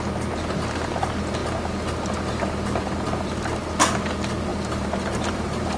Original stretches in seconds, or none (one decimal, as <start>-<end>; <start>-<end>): 0.0-4.5